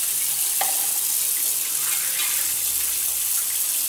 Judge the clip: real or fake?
real